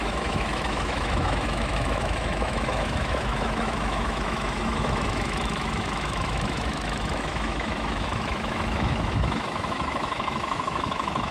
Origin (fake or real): fake